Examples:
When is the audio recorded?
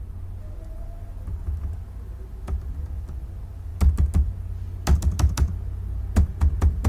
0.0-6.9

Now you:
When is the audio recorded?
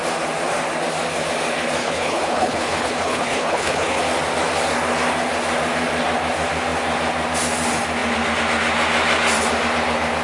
0.0-1.8; 4.0-10.2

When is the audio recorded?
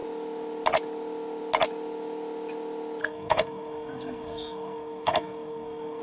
0.0-3.0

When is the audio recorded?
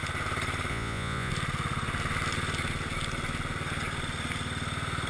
0.0-0.7; 1.3-5.1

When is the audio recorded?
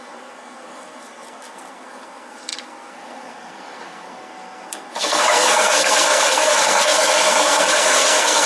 none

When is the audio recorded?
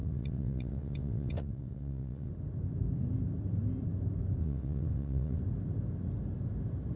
2.3-4.4; 5.4-7.0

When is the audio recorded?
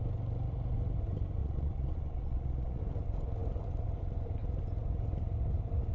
0.0-1.4; 2.8-5.9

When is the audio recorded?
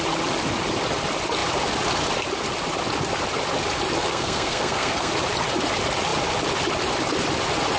0.0-4.0; 5.1-7.8